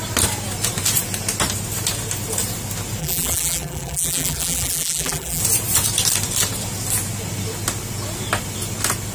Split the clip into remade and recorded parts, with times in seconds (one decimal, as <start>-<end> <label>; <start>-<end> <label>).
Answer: 0.0-3.0 recorded; 3.0-5.4 remade; 5.4-9.1 recorded